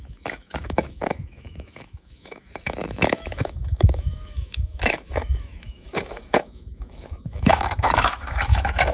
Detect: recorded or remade remade